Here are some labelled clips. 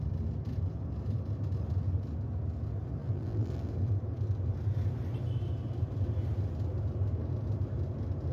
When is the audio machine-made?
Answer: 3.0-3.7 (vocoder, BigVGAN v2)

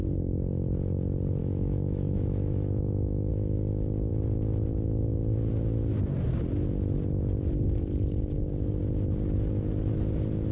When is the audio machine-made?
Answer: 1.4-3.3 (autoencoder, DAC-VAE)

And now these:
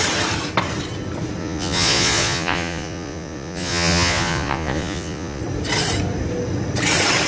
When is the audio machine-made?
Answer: 1.4-5.4 (vocoder, Vocos)